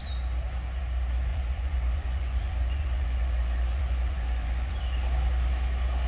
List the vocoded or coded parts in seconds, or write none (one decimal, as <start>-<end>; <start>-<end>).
1.3-4.8